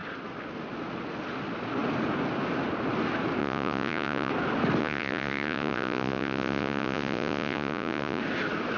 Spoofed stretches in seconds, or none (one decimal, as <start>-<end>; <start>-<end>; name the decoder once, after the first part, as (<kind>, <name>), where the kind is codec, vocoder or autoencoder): 3.4-4.3 (vocoder, Vocos); 4.8-8.2